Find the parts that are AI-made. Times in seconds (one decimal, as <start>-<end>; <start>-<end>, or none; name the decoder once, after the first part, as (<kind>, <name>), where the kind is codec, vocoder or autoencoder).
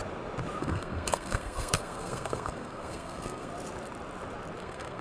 0.6-3.5 (codec, SNAC); 4.6-5.0